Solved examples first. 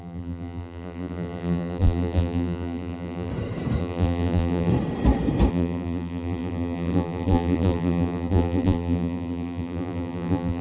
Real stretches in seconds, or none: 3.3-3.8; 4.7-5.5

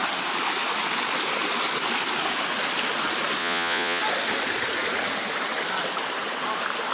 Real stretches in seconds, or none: 0.0-3.4; 4.0-6.9

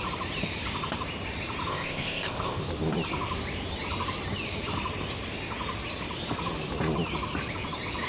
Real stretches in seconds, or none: 0.0-1.7; 2.6-8.1

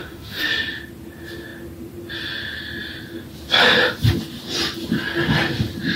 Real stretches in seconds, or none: 0.5-6.0

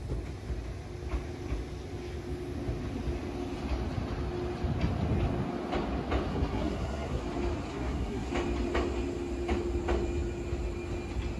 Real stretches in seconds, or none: 0.0-6.3; 7.2-7.7; 8.3-11.4

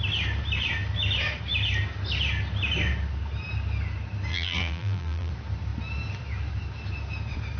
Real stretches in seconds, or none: 0.0-4.3; 5.3-7.6